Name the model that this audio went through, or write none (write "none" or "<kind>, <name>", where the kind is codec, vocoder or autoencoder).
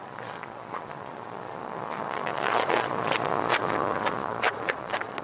vocoder, Vocos